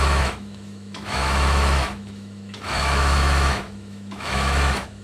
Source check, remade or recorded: remade